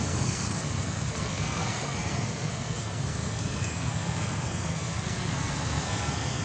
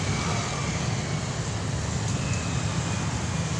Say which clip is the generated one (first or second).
first